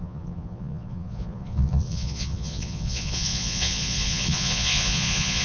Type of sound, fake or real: fake